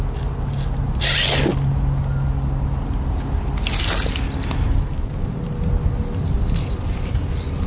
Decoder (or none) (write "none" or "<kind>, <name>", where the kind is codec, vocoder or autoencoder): none